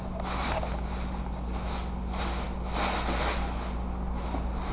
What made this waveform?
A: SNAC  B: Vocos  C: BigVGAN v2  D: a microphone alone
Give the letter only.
D